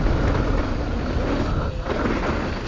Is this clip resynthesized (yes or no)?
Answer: no